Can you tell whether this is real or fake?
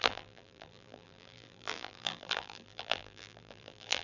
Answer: fake